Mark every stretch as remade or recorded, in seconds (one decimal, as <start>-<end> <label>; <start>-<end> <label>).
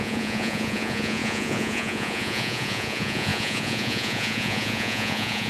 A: 0.0-5.5 remade